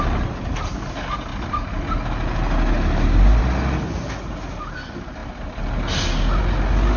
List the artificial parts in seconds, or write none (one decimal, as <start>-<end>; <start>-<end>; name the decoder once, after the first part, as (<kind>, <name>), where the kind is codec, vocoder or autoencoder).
none